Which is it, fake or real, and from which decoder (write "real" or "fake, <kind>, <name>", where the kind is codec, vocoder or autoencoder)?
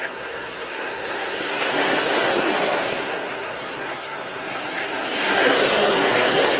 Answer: fake, codec, SNAC